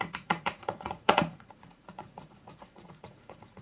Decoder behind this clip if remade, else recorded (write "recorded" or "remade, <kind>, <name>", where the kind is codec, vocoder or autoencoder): remade, vocoder, Vocos